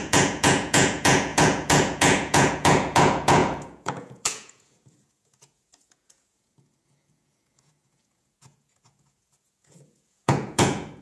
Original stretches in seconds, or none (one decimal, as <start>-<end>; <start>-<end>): none